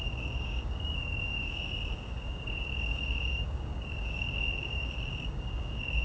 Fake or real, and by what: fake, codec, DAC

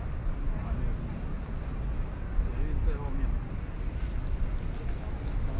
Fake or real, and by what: real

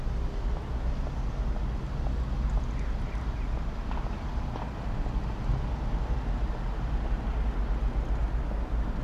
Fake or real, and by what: real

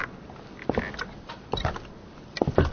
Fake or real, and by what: real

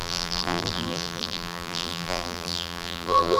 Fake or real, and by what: fake, vocoder, BigVGAN v2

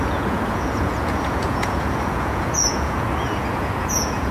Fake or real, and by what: fake, vocoder, Vocos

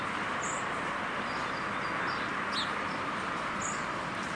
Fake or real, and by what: real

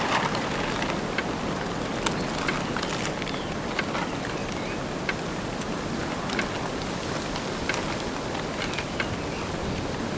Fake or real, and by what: real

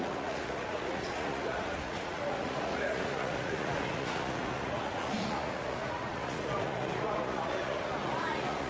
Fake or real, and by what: fake, vocoder, Vocos